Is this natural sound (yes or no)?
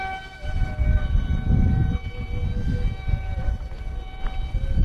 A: yes